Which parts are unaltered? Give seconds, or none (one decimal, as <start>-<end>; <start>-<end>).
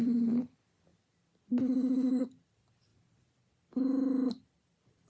0.9-2.2; 2.9-4.5